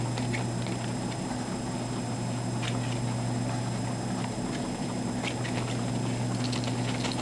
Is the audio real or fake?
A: real